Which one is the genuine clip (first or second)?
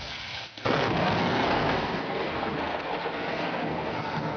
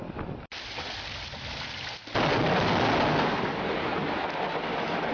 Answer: second